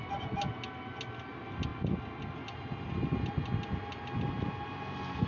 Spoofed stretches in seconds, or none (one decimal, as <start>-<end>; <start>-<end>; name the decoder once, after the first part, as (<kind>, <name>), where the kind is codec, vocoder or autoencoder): none